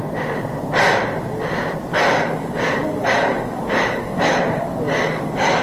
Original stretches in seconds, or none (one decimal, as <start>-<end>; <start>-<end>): 0.0-1.9